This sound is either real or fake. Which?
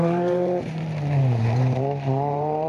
fake